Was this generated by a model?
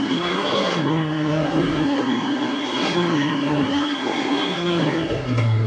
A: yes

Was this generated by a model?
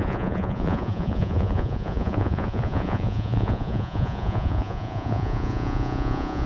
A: yes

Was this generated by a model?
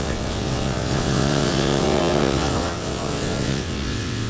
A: yes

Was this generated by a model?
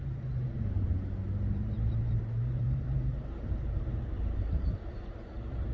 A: yes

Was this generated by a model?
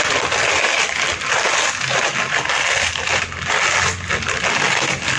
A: no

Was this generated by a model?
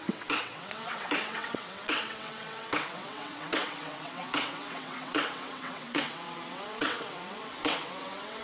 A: yes